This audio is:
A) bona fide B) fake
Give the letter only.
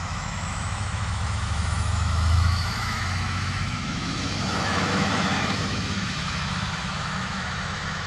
B